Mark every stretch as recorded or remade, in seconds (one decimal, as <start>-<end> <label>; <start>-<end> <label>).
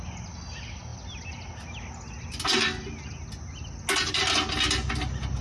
0.0-5.4 recorded